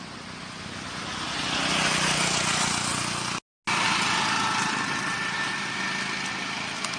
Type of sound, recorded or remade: recorded